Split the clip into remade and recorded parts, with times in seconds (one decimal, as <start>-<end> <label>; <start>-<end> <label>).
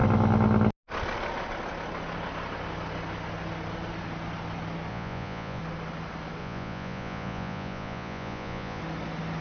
0.0-4.9 recorded; 4.9-5.6 remade; 5.6-6.4 recorded; 6.4-8.8 remade; 8.8-9.4 recorded